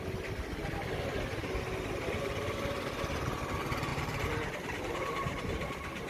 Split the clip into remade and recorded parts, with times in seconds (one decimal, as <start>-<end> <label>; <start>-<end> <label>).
0.0-3.9 recorded; 3.9-6.1 remade